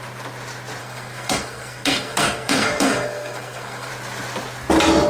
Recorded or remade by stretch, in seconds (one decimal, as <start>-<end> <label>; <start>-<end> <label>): 0.0-0.8 recorded; 0.8-3.9 remade; 3.9-5.1 recorded